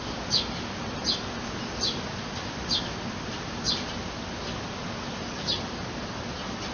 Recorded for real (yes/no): yes